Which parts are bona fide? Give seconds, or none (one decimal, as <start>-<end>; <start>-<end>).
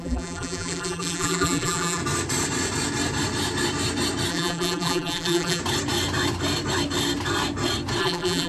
2.0-4.3; 5.6-8.0